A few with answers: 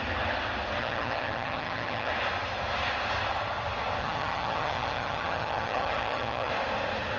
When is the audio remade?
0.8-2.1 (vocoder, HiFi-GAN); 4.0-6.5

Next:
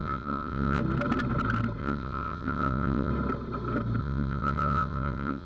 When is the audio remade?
0.0-0.8 (vocoder, WaveNeXt); 1.8-3.1; 4.0-5.5

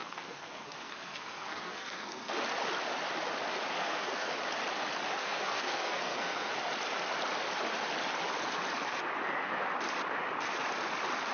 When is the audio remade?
0.0-2.3 (codec, SNAC); 3.8-4.4; 5.2-6.5

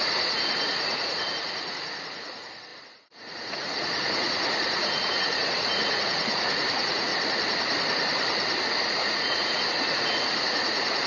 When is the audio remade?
0.0-7.1 (vocoder, Vocos); 8.8-11.1